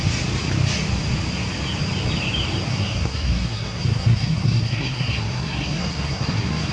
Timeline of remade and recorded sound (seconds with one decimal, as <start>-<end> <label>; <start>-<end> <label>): 0.0-2.7 recorded; 2.7-6.7 remade